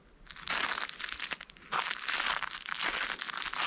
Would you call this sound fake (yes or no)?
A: no